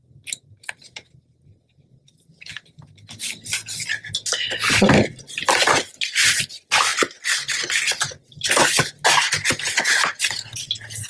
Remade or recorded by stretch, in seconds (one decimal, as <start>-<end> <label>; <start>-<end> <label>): 0.0-11.1 recorded